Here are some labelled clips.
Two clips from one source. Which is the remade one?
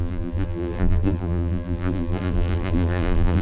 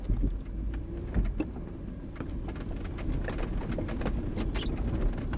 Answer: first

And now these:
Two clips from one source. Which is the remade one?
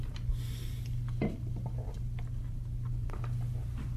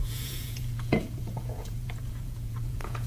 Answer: second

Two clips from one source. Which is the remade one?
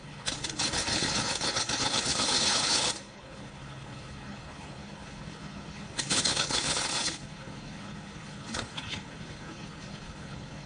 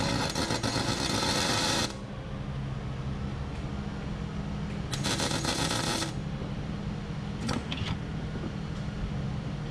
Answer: first